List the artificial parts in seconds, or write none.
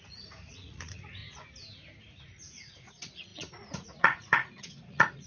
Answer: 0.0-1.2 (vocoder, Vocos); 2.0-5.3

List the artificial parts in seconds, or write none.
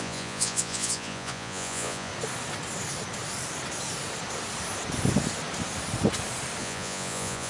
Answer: 0.0-2.1 (vocoder, Vocos); 6.6-7.5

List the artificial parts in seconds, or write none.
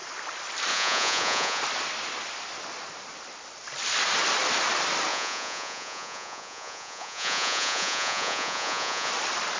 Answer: 0.7-1.6 (vocoder, Vocos); 5.1-9.1